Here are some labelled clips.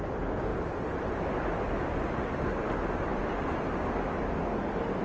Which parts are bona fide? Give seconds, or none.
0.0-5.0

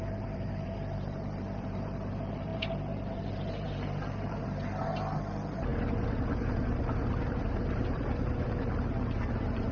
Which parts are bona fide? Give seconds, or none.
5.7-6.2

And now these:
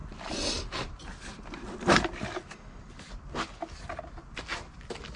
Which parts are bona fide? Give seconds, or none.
0.0-5.2

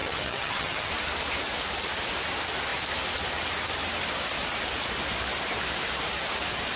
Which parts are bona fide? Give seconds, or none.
0.9-6.8